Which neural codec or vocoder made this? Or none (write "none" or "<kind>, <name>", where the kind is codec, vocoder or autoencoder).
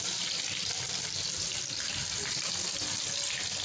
none